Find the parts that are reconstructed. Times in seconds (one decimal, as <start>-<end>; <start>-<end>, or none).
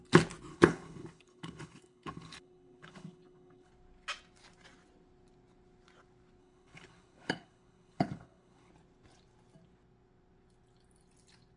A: 0.5-3.7; 6.4-8.7